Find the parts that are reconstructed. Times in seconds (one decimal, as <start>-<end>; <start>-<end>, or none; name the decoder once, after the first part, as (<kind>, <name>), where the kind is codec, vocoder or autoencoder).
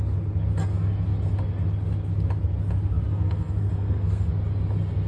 3.1-4.3 (codec, SNAC)